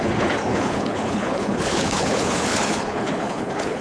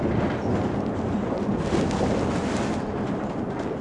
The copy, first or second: first